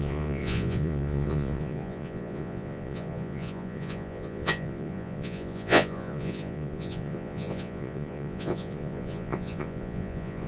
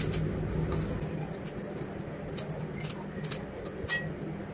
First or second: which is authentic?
second